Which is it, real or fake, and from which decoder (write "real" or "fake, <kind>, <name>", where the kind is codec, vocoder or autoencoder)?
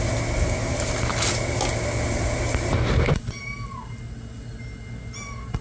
real